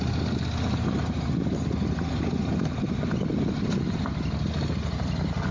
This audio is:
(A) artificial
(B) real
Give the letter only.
B